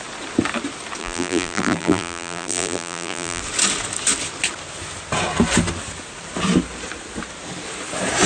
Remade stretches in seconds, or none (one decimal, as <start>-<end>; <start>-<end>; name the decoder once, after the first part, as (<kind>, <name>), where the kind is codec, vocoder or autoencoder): 1.0-3.4 (vocoder, BigVGAN v2)